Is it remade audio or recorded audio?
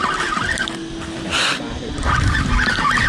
recorded